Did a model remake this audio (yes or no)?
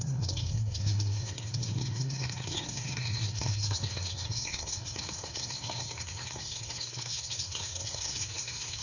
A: yes